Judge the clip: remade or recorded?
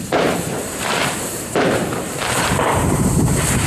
remade